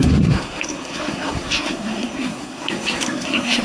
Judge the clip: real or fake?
fake